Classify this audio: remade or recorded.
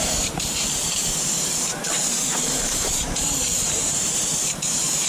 remade